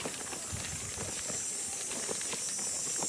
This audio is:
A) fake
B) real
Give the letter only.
B